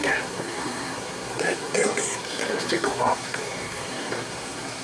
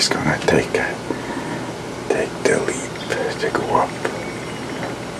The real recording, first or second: second